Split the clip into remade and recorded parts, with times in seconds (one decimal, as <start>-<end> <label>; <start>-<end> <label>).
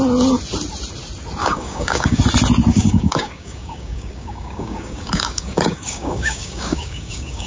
0.0-1.4 recorded; 1.4-2.2 remade; 2.2-2.7 recorded; 2.7-7.5 remade